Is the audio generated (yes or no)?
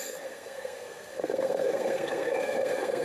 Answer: yes